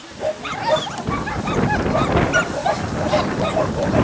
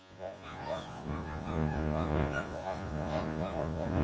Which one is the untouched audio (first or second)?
first